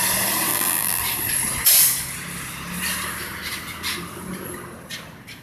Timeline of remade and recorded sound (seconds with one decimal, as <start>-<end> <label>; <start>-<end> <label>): 0.0-0.5 recorded; 0.5-1.0 remade; 1.0-5.4 recorded